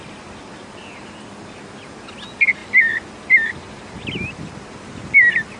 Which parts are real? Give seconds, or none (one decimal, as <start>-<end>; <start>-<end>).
0.0-5.6